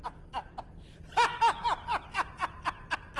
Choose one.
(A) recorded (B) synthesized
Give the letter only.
A